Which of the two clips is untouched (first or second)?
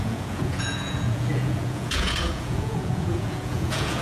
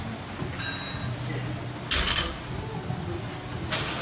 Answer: second